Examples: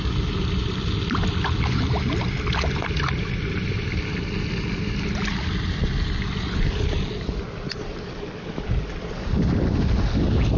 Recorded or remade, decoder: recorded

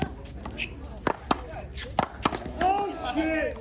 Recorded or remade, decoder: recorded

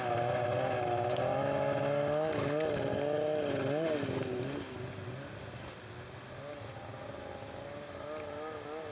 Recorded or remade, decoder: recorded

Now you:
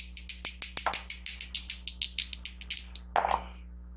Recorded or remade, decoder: recorded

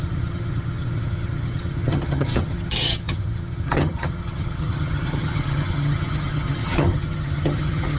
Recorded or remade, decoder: remade, vocoder, HiFi-GAN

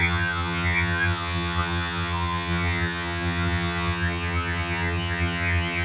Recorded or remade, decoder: remade, vocoder, HiFi-GAN